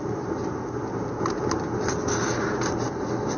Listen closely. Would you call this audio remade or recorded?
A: recorded